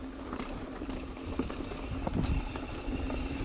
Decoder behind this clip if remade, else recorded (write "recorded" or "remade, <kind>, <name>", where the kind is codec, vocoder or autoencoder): recorded